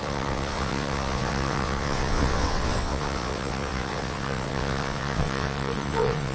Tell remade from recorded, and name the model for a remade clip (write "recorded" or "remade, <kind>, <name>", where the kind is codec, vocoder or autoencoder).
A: remade, vocoder, WaveNeXt